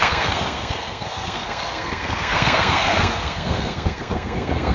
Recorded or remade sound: remade